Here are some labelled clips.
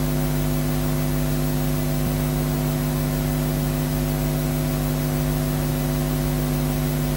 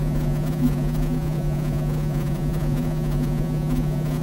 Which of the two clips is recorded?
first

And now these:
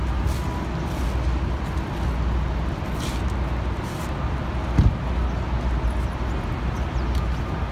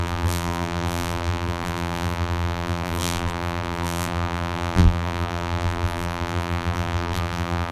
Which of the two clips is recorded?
first